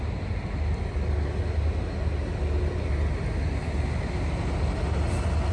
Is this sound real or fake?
real